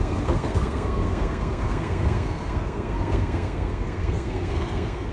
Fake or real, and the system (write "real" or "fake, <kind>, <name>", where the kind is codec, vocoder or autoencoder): fake, codec, SNAC